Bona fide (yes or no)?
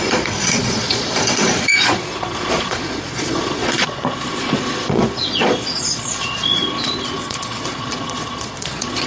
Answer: no